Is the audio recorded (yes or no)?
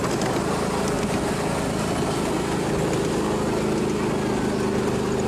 yes